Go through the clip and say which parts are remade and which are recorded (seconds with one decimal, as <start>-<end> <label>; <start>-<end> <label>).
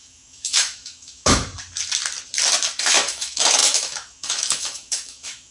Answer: 0.0-1.5 remade; 1.5-2.8 recorded; 2.8-5.5 remade